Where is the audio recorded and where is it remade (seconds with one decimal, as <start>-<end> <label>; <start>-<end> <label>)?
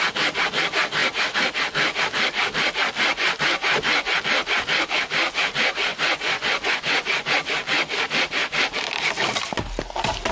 0.0-3.1 recorded; 3.1-4.2 remade; 4.2-5.9 recorded; 5.9-7.3 remade; 7.3-10.3 recorded